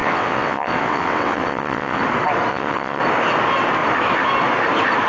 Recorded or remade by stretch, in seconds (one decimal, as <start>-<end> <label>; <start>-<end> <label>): 0.0-2.0 remade; 2.0-2.5 recorded; 2.5-3.0 remade; 3.0-5.1 recorded